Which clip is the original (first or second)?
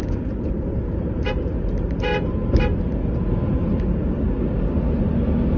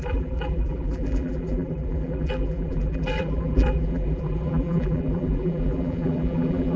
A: first